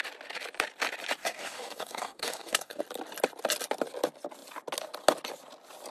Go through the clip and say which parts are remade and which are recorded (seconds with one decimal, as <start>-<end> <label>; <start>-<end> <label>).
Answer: 0.0-1.2 recorded; 1.2-2.8 remade; 2.8-5.9 recorded